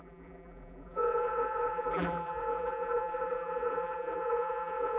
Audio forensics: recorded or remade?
remade